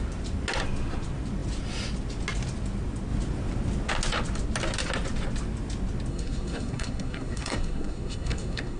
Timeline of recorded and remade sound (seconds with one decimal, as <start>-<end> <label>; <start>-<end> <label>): 0.0-6.1 recorded; 6.1-8.8 remade